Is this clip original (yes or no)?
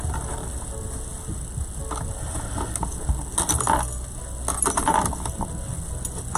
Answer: yes